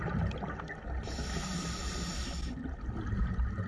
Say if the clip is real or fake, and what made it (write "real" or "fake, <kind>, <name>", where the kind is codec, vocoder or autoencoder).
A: real